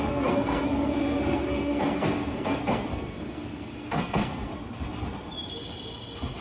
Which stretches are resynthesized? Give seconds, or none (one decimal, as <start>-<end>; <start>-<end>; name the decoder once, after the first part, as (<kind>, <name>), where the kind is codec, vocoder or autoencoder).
0.0-4.5 (codec, SNAC)